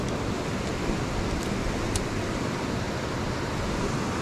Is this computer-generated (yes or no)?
no